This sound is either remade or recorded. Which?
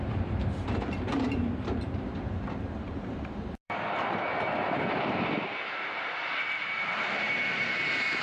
remade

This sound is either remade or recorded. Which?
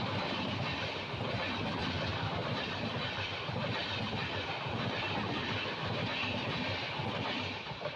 remade